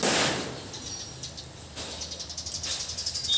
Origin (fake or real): real